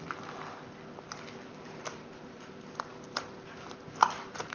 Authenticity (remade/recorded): recorded